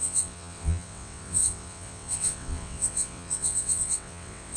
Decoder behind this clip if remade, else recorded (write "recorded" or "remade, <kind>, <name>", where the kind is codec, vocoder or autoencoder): remade, vocoder, WaveNeXt